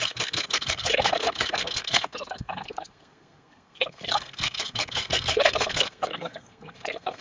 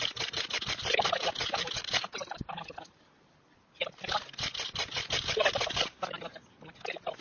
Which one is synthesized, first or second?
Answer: first